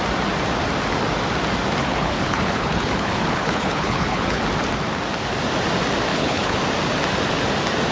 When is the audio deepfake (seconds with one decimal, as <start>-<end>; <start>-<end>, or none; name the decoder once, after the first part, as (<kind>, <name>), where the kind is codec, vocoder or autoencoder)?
1.8-4.4 (codec, HILCodec); 6.1-6.6